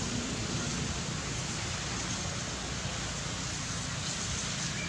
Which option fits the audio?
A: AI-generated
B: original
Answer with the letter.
B